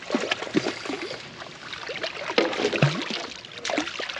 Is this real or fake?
real